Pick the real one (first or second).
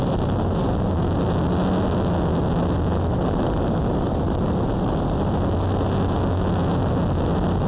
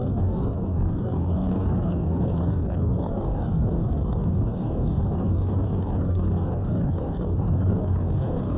first